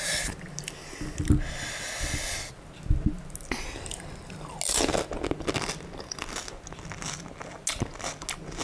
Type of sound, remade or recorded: recorded